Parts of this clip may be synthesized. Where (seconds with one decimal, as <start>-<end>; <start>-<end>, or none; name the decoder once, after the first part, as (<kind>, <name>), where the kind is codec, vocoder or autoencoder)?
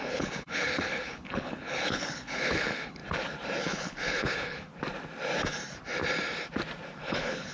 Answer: 0.0-3.0 (codec, HILCodec); 3.6-4.7; 7.0-7.5